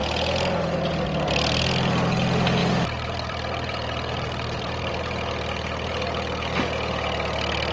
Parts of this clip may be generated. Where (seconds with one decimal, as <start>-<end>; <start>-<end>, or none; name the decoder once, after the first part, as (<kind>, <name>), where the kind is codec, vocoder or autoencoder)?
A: 2.6-5.0 (vocoder, BigVGAN v2)